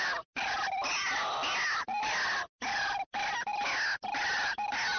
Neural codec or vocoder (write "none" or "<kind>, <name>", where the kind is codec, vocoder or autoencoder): none